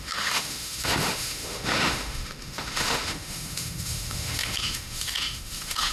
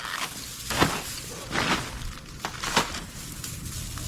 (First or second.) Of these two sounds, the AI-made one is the first